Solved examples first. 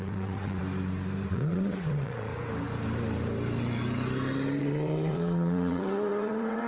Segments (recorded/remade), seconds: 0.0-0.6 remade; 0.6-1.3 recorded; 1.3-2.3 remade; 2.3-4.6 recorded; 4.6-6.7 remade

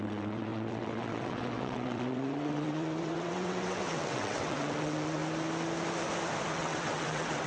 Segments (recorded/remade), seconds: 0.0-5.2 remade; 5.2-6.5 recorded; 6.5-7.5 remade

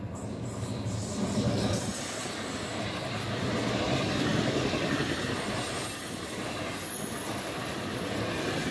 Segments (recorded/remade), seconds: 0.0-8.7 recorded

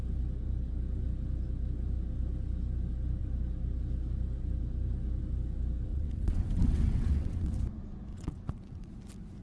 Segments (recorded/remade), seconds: 0.0-5.9 recorded; 5.9-7.6 remade; 7.6-8.1 recorded; 8.1-8.9 remade; 8.9-9.4 recorded

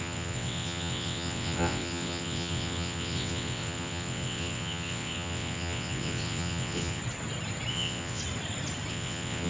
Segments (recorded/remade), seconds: 0.0-7.0 remade; 7.0-7.7 recorded; 7.7-8.2 remade; 8.2-8.9 recorded; 8.9-9.5 remade

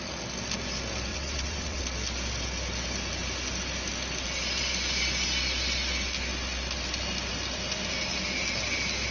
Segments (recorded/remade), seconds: 0.0-1.1 recorded; 1.1-1.8 remade; 1.8-9.1 recorded

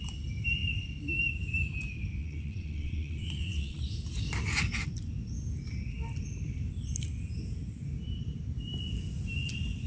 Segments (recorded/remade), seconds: 0.0-2.2 recorded; 2.2-3.8 remade; 3.8-9.9 recorded

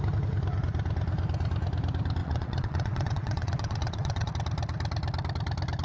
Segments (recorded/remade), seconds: 0.0-2.2 recorded; 2.2-4.3 remade; 4.3-5.8 recorded